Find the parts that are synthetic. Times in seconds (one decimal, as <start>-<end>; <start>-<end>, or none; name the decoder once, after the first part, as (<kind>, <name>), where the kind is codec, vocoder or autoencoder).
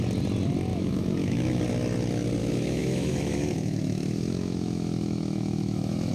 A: 0.7-1.6 (autoencoder, DAC-VAE); 2.4-6.1